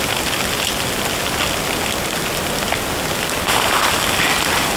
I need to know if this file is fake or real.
real